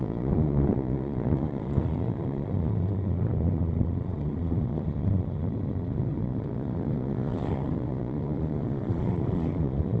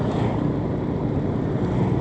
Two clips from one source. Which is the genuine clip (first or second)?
second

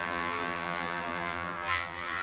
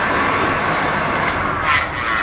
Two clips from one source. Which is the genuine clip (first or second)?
second